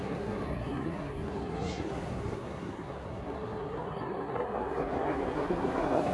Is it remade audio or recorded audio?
remade